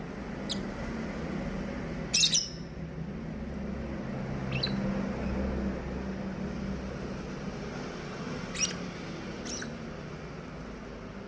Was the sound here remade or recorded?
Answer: recorded